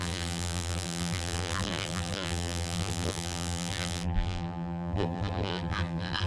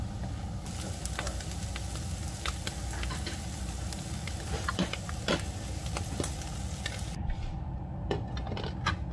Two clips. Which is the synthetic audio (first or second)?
first